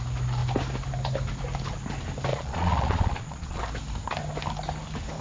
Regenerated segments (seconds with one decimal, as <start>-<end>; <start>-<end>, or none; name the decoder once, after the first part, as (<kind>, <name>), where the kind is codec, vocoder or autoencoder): 2.3-3.6 (vocoder, Vocos)